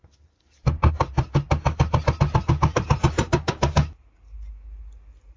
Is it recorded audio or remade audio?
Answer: recorded